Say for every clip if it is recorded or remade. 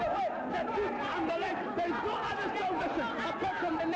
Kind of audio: recorded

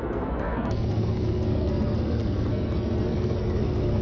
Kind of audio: remade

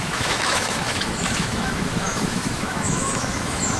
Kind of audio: remade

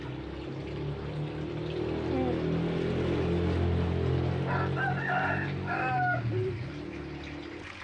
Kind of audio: recorded